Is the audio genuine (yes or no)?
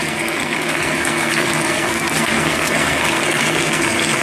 no